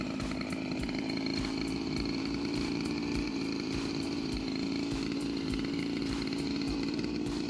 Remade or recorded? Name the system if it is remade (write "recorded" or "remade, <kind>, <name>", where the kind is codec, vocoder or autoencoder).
remade, vocoder, BigVGAN v2